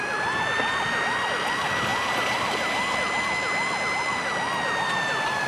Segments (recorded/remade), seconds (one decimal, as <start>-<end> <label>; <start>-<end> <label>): 0.0-5.5 recorded